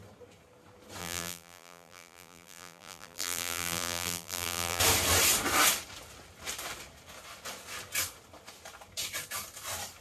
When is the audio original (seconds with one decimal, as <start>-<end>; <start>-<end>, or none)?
0.0-1.0; 4.8-10.0